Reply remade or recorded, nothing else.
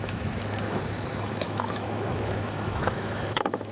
remade